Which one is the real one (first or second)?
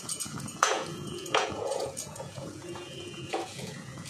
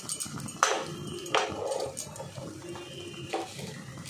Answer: second